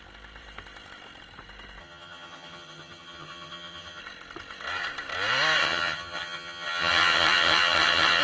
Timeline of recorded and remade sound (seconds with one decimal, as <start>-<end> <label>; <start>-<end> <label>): 0.0-1.8 recorded; 1.8-4.0 remade; 4.0-5.6 recorded; 5.6-8.2 remade